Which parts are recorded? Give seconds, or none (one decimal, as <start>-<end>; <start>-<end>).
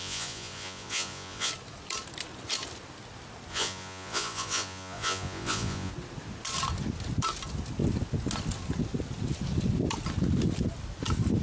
1.5-3.5; 5.9-11.4